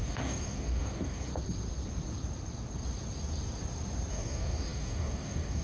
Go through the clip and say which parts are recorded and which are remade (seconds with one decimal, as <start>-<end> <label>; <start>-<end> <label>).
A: 0.0-1.3 remade; 1.3-4.1 recorded; 4.1-5.6 remade